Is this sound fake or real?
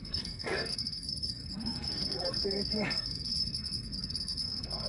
fake